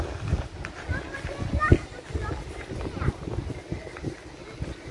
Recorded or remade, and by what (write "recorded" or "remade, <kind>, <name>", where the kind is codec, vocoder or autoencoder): recorded